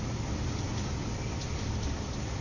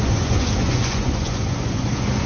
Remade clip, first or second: second